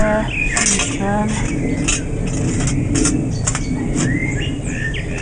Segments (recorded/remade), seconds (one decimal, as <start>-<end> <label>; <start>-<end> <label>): 0.0-5.2 recorded